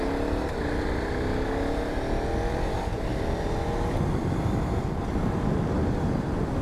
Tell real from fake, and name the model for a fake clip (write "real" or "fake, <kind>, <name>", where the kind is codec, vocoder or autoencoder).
real